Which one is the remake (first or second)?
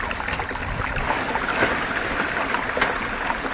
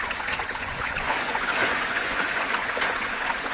second